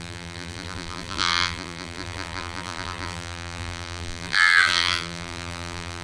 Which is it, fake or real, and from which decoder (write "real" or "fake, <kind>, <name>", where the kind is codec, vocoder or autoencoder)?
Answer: fake, vocoder, BigVGAN v2